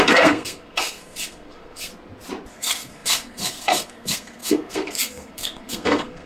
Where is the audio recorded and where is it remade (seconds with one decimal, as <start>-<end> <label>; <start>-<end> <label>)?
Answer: 0.0-1.9 remade; 1.9-2.5 recorded; 2.5-6.3 remade